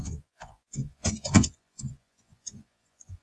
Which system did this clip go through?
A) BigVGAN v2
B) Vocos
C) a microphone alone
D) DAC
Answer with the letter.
B